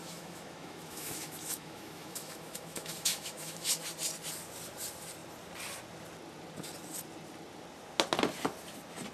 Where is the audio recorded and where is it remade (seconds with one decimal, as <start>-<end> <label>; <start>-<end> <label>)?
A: 0.0-3.7 remade; 3.7-9.1 recorded